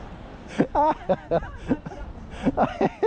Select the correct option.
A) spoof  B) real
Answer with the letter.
B